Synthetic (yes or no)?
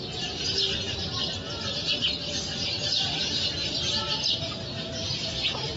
no